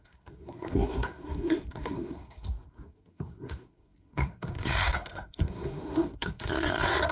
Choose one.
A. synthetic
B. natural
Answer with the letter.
A